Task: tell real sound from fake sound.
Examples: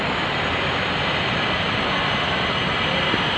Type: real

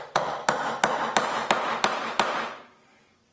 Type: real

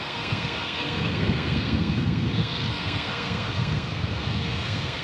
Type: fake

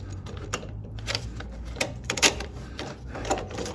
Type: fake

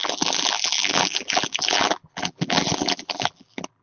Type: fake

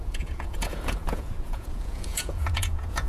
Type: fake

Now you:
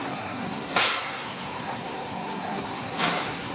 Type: fake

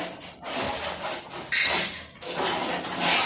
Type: real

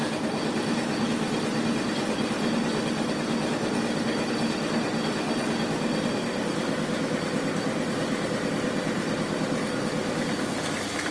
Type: real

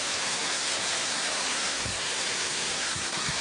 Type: fake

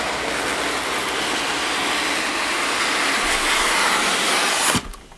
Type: real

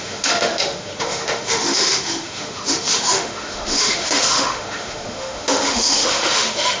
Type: fake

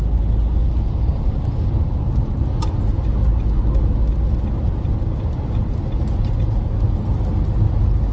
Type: real